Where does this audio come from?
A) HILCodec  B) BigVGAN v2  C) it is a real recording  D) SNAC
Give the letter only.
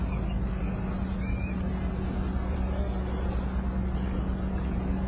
C